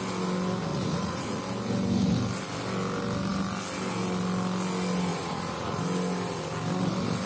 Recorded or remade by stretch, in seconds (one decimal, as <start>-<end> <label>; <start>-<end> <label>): 0.0-0.7 recorded; 0.7-1.4 remade; 1.4-5.1 recorded; 5.1-5.8 remade; 5.8-7.3 recorded